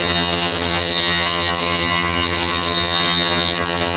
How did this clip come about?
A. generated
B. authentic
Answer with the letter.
A